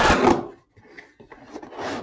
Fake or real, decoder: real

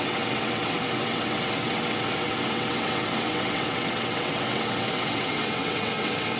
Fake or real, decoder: fake, vocoder, WaveNeXt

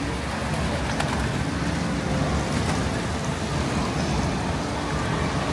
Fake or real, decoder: real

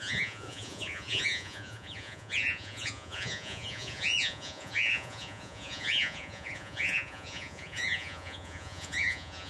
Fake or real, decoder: fake, vocoder, Vocos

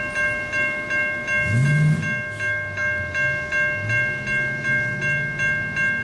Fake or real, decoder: real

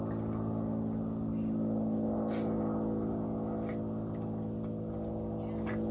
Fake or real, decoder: real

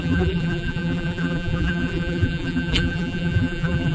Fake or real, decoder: fake, vocoder, BigVGAN v2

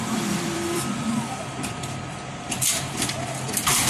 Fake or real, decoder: fake, vocoder, BigVGAN v2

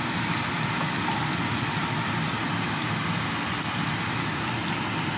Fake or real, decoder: real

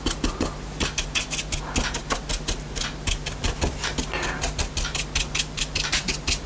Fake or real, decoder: real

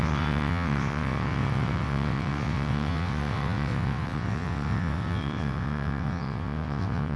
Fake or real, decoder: fake, vocoder, WaveNeXt